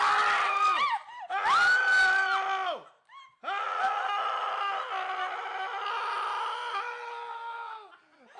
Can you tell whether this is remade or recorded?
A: recorded